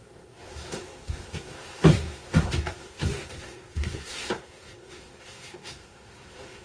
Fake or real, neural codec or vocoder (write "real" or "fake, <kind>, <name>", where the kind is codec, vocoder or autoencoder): fake, codec, SNAC